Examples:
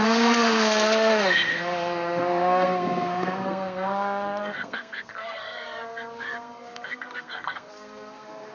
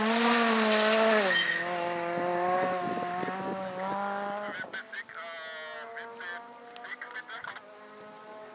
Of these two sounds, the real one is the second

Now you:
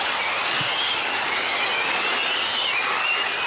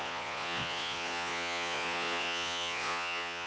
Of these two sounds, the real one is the first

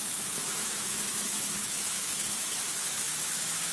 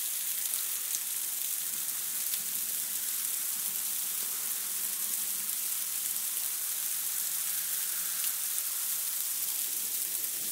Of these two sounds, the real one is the second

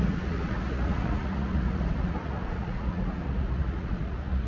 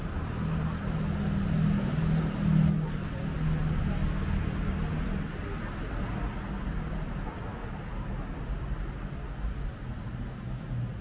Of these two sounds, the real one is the second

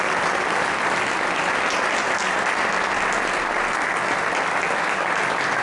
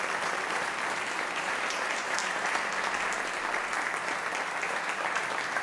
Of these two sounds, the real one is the first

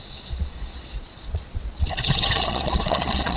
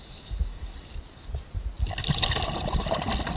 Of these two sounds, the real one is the second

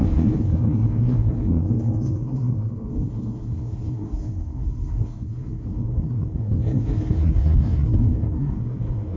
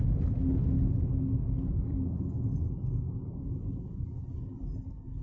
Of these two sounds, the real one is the second